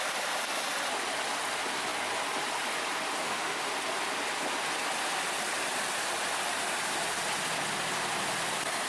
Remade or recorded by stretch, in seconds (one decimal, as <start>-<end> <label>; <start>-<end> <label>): 0.0-3.2 recorded; 3.2-3.7 remade; 3.7-8.9 recorded